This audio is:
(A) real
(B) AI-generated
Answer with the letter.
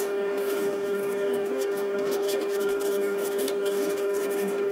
B